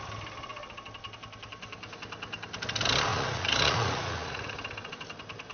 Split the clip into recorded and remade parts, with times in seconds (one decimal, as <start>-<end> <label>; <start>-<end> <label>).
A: 0.0-3.1 recorded; 3.1-4.5 remade; 4.5-5.5 recorded